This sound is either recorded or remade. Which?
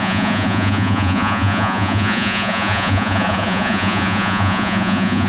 remade